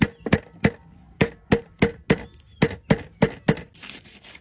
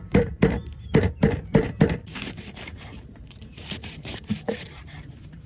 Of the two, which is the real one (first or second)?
first